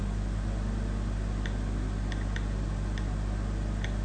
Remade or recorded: recorded